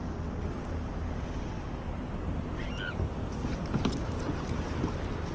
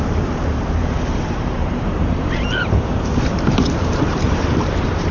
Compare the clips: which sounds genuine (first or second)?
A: first